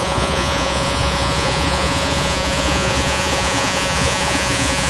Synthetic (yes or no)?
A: yes